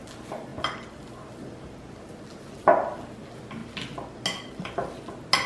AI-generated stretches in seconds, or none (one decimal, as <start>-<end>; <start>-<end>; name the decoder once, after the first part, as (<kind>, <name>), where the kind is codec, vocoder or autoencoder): none